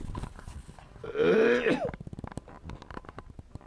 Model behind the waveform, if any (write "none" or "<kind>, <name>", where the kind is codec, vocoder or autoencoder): none